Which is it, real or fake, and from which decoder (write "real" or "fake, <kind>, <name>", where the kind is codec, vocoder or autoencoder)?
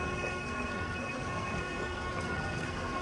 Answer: fake, codec, SNAC